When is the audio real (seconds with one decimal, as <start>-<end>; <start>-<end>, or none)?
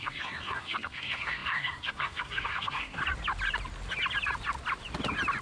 3.0-5.4